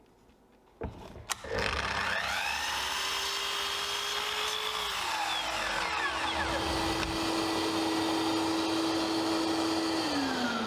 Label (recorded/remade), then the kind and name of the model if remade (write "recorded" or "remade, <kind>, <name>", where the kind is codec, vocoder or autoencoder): recorded